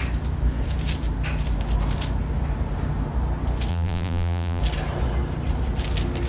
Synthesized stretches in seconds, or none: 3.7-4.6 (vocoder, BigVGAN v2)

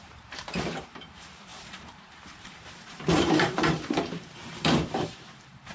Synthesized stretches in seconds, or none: 0.0-5.7 (vocoder, BigVGAN v2)